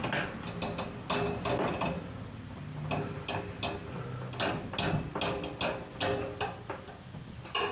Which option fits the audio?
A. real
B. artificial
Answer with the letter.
A